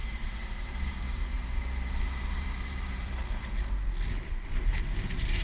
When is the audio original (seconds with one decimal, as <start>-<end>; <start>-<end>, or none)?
3.2-5.4